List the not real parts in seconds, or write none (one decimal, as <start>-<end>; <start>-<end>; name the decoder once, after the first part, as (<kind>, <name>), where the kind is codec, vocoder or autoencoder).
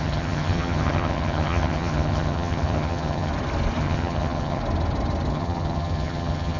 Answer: 0.0-3.3 (vocoder, HiFi-GAN); 3.8-4.6; 5.3-6.6